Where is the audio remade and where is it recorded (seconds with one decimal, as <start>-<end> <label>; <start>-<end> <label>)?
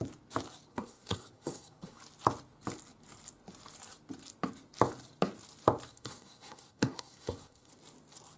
0.0-0.7 recorded; 0.7-2.0 remade; 2.0-5.9 recorded; 5.9-7.7 remade; 7.7-8.4 recorded